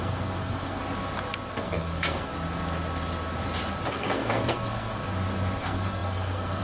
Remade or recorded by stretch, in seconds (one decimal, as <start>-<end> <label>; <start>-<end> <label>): 0.0-0.8 remade; 0.8-1.5 recorded; 1.5-2.3 remade; 2.3-3.9 recorded; 3.9-5.0 remade; 5.0-5.6 recorded; 5.6-6.6 remade